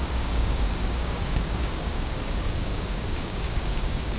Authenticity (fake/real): fake